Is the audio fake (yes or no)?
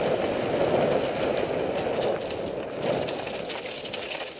no